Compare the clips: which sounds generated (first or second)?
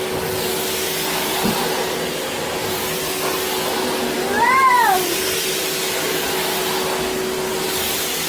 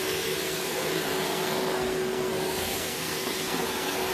second